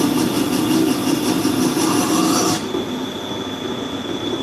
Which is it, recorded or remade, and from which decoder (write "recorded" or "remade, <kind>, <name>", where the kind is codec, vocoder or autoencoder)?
recorded